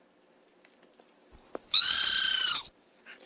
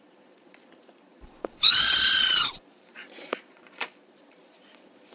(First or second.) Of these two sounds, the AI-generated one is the second